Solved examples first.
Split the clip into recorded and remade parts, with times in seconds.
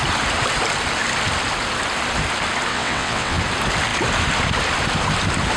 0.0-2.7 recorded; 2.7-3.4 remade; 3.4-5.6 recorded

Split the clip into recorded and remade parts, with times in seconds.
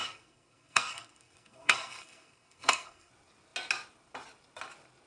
0.0-3.1 remade; 3.1-5.1 recorded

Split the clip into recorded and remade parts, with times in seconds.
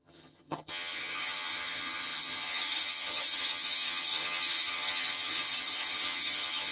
0.0-6.7 remade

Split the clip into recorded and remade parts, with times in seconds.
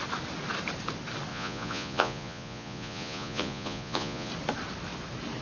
0.0-1.3 recorded; 1.3-4.3 remade; 4.3-5.4 recorded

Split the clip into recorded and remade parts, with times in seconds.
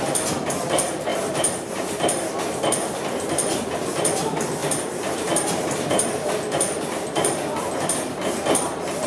0.0-1.1 recorded; 1.1-2.3 remade; 2.3-4.6 recorded; 4.6-6.3 remade; 6.3-9.1 recorded